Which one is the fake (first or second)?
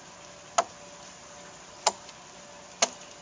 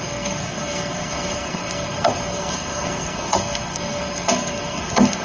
second